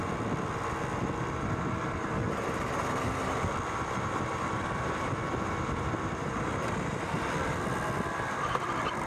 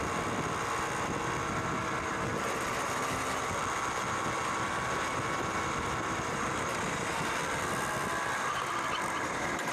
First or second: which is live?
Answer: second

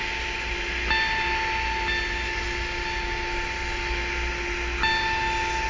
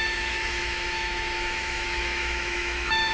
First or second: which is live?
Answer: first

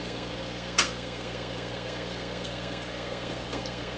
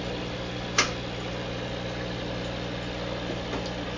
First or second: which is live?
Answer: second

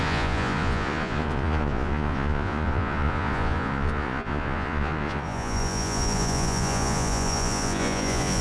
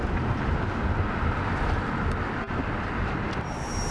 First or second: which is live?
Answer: second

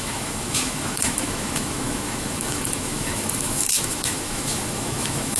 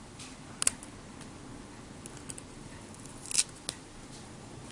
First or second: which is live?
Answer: second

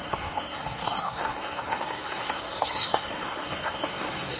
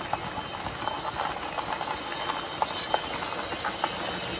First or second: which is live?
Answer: second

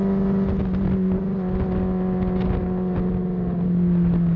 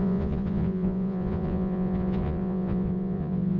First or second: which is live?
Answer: first